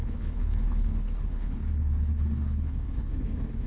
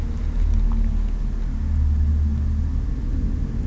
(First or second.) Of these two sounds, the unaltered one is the second